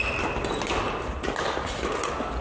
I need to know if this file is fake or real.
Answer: real